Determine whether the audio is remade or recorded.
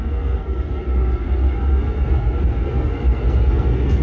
remade